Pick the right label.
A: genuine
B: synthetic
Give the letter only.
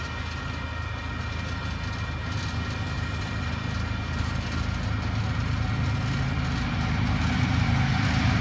A